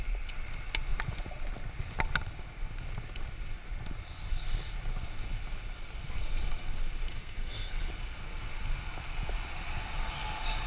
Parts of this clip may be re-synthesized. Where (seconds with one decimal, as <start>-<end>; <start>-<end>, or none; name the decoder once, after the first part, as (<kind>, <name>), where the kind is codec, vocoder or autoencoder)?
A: 7.1-7.9 (codec, SNAC)